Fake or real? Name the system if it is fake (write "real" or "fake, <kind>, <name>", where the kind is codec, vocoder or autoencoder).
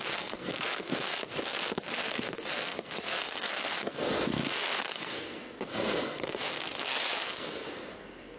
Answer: fake, codec, SNAC